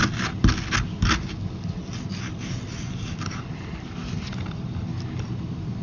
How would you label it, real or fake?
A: real